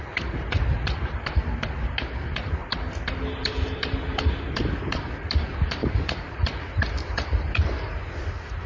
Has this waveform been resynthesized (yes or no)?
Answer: no